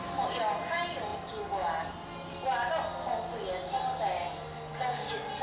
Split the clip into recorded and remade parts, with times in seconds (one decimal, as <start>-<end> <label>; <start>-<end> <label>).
0.0-5.4 recorded